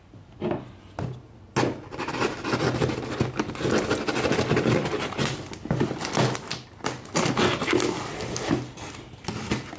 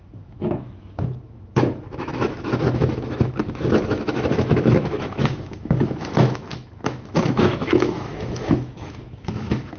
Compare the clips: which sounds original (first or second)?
first